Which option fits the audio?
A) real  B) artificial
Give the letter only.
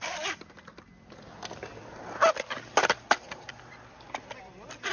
A